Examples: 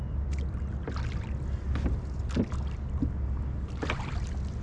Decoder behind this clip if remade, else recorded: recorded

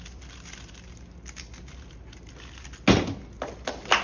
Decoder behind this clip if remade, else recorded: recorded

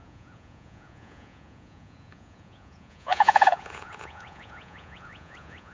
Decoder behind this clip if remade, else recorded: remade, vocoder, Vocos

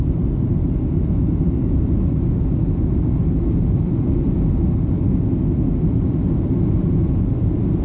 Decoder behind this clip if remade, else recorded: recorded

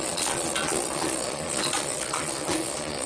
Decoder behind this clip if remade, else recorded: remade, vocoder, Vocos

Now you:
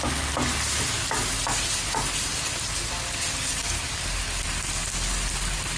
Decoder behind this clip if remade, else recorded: recorded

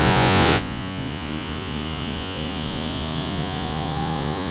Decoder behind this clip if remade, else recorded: remade, vocoder, Vocos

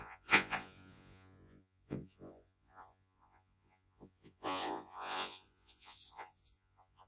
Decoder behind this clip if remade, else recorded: remade, vocoder, Vocos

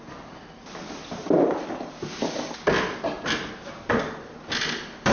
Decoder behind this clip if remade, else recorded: recorded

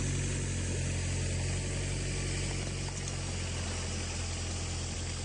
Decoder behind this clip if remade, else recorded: recorded